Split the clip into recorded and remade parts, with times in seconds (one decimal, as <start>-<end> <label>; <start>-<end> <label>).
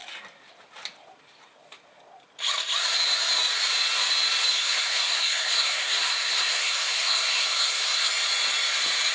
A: 0.0-4.5 recorded; 4.5-8.1 remade; 8.1-9.1 recorded